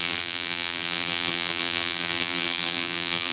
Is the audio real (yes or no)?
no